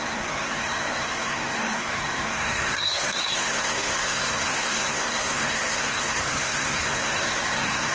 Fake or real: fake